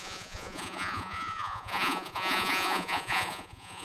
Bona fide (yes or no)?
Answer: no